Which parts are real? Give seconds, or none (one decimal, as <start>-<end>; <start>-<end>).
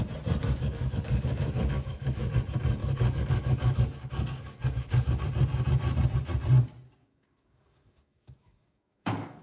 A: 0.0-0.4; 2.3-2.8; 5.2-7.0